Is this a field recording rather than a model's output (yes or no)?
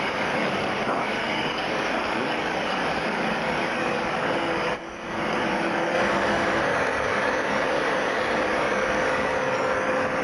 no